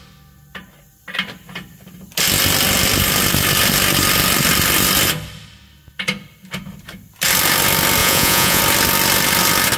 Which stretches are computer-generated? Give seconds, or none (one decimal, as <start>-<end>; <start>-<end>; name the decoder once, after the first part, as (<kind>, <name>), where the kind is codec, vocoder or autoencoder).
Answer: 8.0-8.6 (vocoder, Vocos)